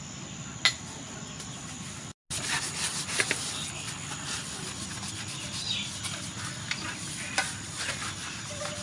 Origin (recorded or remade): recorded